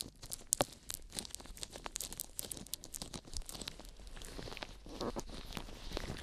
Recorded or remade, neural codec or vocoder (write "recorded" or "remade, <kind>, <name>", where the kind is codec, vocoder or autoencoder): recorded